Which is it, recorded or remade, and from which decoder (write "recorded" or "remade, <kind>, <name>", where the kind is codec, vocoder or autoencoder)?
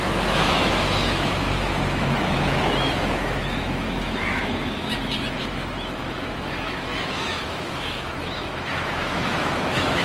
remade, autoencoder, DAC-VAE